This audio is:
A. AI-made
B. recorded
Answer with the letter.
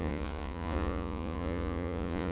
A